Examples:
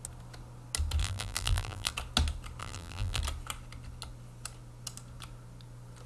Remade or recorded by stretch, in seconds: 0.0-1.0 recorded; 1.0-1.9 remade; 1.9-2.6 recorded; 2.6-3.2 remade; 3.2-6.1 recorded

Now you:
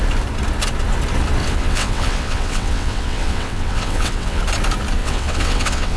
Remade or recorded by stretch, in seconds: 0.0-1.4 recorded; 1.4-4.4 remade; 4.4-5.0 recorded; 5.0-6.0 remade

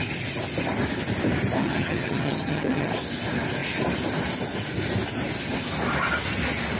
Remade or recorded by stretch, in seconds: 0.0-1.6 recorded; 1.6-2.9 remade; 2.9-6.8 recorded